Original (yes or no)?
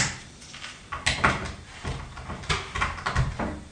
yes